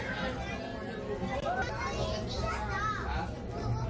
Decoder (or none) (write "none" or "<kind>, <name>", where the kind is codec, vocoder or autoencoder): none